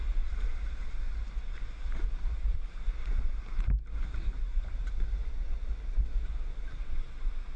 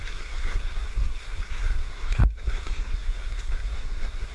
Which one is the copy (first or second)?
second